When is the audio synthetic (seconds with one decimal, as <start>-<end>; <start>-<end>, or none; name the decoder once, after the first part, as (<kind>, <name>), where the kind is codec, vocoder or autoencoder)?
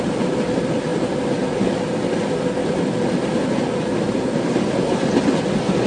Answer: none